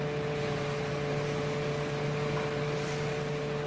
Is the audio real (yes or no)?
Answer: yes